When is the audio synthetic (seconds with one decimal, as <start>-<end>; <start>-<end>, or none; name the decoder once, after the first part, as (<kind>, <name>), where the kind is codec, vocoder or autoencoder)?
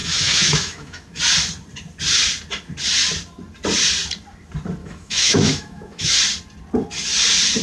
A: 0.0-1.2 (autoencoder, DAC-VAE); 4.8-6.2